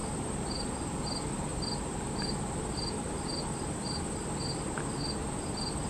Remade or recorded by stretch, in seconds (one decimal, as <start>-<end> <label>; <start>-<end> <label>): 0.0-5.9 recorded